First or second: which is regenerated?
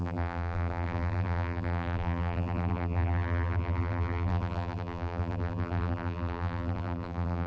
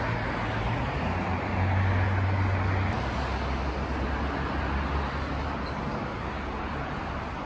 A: first